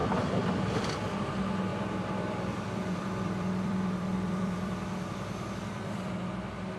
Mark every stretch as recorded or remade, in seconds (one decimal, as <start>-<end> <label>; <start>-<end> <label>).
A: 0.0-1.2 remade; 1.2-1.7 recorded; 1.7-5.5 remade; 5.5-6.8 recorded